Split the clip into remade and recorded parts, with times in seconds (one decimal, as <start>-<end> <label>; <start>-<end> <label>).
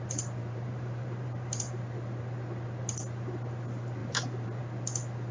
0.0-0.4 recorded; 0.4-1.8 remade; 1.8-4.0 recorded; 4.0-4.6 remade; 4.6-5.3 recorded